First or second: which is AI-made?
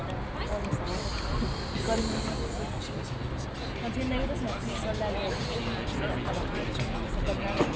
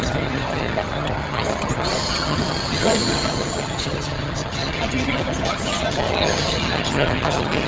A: second